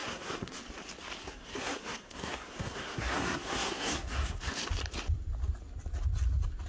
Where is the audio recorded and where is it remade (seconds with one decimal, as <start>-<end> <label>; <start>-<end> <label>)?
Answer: 0.0-0.6 remade; 0.6-1.2 recorded; 1.2-4.7 remade; 4.7-6.7 recorded